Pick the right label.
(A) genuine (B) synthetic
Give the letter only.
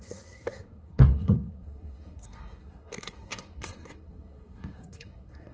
B